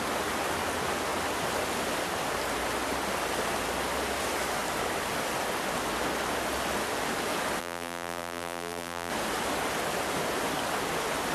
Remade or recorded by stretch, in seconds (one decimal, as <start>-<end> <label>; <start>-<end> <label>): 0.0-7.6 recorded; 7.6-9.1 remade; 9.1-11.3 recorded